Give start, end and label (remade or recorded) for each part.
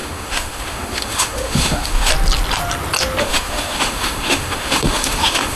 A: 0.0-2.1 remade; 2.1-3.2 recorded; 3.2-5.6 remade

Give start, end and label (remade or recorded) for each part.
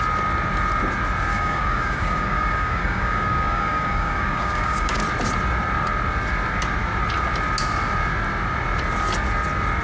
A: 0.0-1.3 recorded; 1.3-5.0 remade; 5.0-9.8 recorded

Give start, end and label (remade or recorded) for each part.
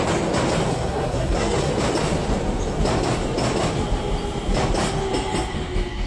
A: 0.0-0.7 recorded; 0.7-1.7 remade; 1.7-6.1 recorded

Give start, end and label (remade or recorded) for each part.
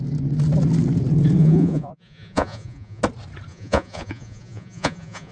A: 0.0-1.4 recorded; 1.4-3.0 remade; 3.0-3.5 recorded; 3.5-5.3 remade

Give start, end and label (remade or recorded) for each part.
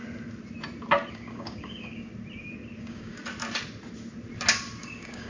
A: 0.0-1.1 recorded; 1.1-2.1 remade; 2.1-2.8 recorded; 2.8-3.2 remade; 3.2-4.8 recorded; 4.8-5.3 remade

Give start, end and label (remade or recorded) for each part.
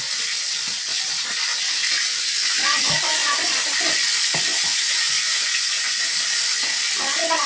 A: 0.0-4.7 recorded; 4.7-6.0 remade; 6.0-7.5 recorded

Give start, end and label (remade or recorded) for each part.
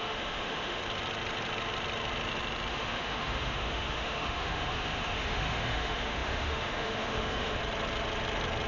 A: 0.0-0.8 remade; 0.8-2.7 recorded; 2.7-7.6 remade; 7.6-8.7 recorded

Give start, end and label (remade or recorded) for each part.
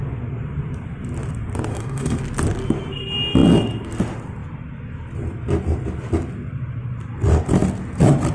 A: 0.0-1.7 recorded; 1.7-2.2 remade; 2.2-8.3 recorded